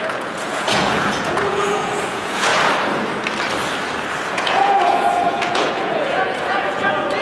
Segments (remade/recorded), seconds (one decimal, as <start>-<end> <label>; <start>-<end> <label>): 0.0-2.5 remade; 2.5-4.3 recorded; 4.3-7.2 remade